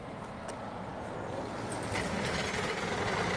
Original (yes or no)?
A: yes